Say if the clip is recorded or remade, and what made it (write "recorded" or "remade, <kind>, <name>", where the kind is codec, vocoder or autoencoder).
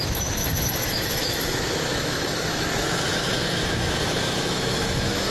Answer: remade, autoencoder, DAC-VAE